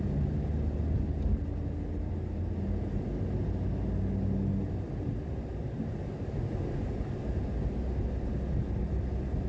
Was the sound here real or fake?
real